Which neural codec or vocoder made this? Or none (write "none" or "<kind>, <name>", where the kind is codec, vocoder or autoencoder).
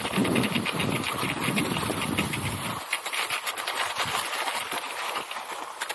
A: none